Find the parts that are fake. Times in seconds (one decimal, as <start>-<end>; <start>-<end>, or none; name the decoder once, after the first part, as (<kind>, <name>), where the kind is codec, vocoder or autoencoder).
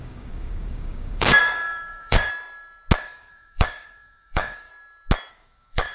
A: 0.0-2.3 (codec, DAC); 3.0-4.7; 5.3-5.9